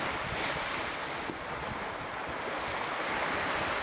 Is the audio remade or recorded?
recorded